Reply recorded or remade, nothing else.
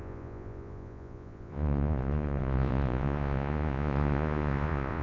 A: remade